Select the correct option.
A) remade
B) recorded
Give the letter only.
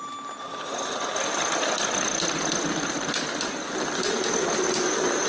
B